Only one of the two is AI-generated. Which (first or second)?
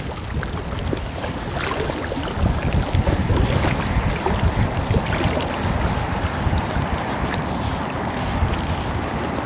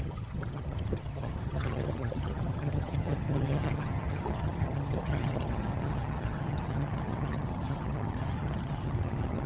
second